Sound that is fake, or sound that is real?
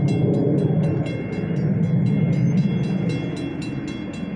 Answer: real